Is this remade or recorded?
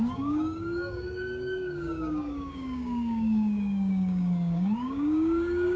remade